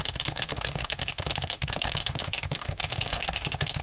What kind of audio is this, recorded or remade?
remade